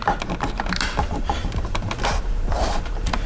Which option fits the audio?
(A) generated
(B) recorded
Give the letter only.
A